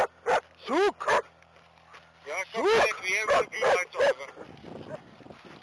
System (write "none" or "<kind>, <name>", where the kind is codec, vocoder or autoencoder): none